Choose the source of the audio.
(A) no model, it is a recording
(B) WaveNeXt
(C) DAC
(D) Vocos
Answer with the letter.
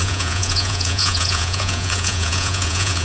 D